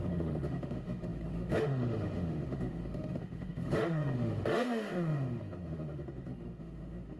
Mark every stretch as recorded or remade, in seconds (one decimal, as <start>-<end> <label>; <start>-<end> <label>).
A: 0.0-7.2 remade